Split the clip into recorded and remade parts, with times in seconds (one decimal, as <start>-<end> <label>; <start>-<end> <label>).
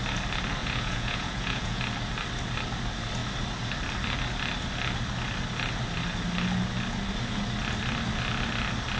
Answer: 0.0-0.6 recorded; 0.6-1.8 remade; 1.8-9.0 recorded